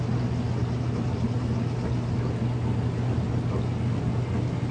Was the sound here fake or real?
real